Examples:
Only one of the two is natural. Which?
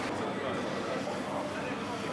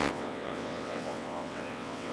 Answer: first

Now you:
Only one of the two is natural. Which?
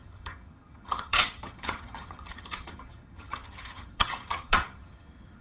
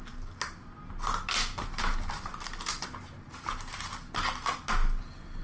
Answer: second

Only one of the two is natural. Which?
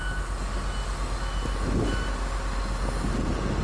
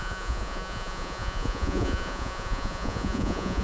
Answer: first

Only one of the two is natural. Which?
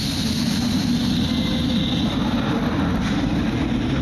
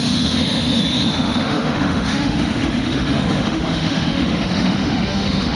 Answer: first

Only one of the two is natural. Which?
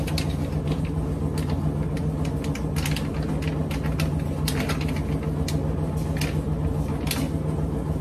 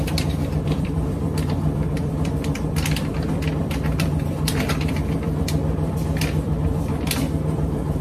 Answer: first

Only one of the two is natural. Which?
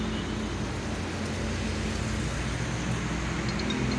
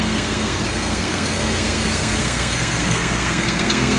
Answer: first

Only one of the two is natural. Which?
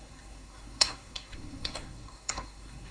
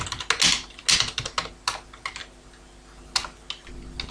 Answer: second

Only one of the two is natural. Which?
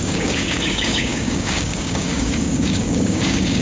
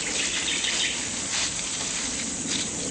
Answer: second